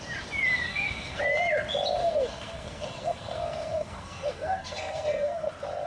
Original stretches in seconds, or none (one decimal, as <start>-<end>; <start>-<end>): 0.0-0.7; 1.2-2.0; 5.5-5.9